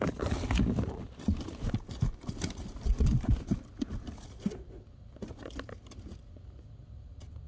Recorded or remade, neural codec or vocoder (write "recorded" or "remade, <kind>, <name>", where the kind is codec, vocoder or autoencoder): recorded